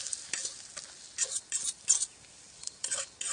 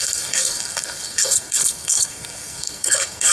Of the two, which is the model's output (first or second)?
second